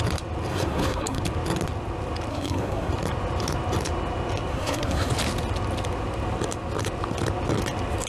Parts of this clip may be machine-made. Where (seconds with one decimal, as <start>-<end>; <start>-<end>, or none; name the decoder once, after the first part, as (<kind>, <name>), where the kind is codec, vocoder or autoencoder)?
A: 0.5-1.2 (codec, SNAC); 2.3-2.9; 4.5-5.1